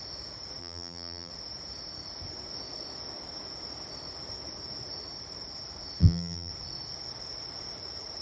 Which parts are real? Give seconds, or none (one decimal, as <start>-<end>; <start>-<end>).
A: 0.0-0.6; 1.3-6.0; 6.5-8.2

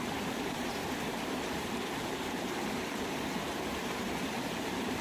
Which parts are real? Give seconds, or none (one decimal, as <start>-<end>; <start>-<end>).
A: none

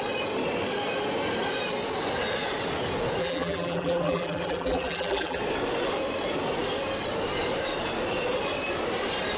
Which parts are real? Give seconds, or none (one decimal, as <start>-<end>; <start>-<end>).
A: 0.0-3.2; 5.4-9.4

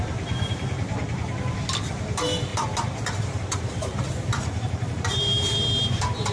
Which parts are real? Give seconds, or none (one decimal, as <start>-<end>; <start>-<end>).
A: 1.0-1.9

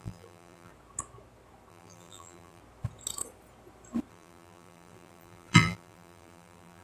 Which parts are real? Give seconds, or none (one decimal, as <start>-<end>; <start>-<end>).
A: 0.7-1.7; 2.6-4.1

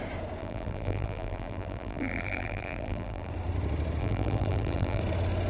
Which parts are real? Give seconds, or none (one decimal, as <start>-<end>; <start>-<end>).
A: 0.0-0.4; 3.3-4.0; 5.0-5.5

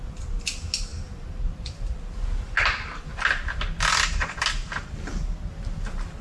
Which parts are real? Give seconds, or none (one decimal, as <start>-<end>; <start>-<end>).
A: 0.0-6.2

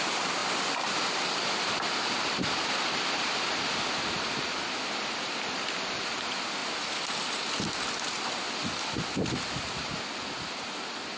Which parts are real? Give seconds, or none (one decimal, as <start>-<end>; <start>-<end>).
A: 0.0-0.4; 3.0-11.2